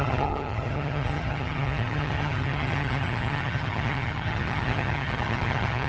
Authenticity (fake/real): fake